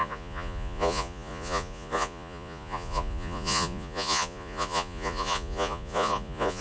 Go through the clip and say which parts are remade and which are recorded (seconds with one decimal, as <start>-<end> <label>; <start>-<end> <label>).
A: 0.0-6.6 remade

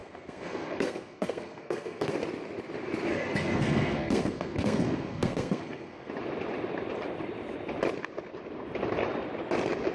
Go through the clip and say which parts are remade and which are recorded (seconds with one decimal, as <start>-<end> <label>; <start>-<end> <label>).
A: 0.0-2.1 remade; 2.1-3.1 recorded; 3.1-6.1 remade; 6.1-9.9 recorded

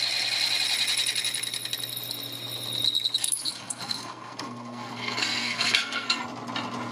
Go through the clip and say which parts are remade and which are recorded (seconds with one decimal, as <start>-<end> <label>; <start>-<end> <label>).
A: 0.0-3.2 recorded; 3.2-6.2 remade; 6.2-6.9 recorded

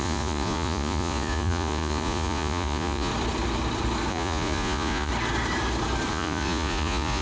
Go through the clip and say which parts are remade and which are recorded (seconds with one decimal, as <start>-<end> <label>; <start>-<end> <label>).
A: 0.0-3.1 remade; 3.1-4.1 recorded; 4.1-5.1 remade; 5.1-6.1 recorded; 6.1-7.2 remade

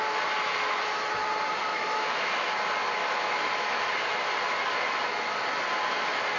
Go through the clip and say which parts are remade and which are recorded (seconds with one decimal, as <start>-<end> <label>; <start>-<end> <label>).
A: 0.0-1.7 recorded; 1.7-2.5 remade; 2.5-3.0 recorded; 3.0-3.9 remade; 3.9-6.4 recorded

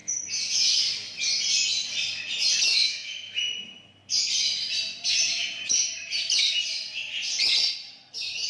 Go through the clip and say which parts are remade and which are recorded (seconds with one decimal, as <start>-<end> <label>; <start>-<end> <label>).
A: 0.0-2.7 recorded; 2.7-3.4 remade; 3.4-8.5 recorded

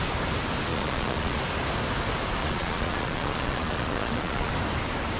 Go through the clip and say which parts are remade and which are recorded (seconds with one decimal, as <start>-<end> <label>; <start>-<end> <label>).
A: 0.0-0.7 recorded; 0.7-1.4 remade; 1.4-2.4 recorded; 2.4-4.5 remade; 4.5-5.2 recorded